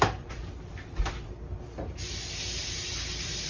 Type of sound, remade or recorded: recorded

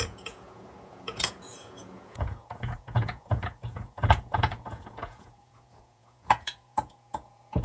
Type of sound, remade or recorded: remade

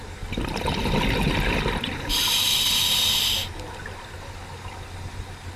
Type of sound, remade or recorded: recorded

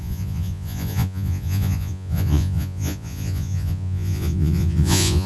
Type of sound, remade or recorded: remade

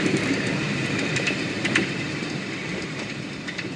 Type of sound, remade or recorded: recorded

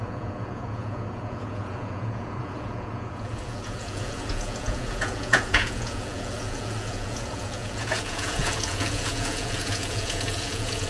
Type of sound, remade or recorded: remade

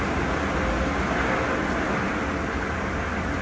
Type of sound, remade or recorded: recorded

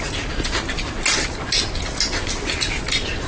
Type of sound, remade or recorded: recorded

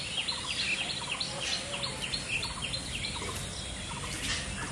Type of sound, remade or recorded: recorded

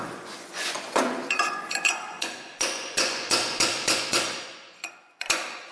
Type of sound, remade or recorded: remade